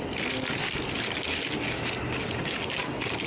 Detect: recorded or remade recorded